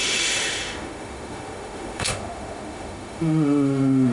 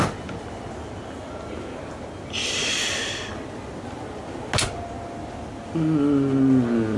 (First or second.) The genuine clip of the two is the second